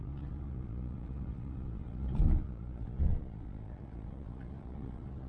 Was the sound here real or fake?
fake